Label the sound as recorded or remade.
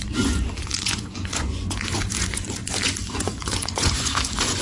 remade